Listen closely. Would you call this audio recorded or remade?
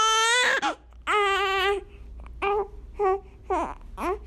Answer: recorded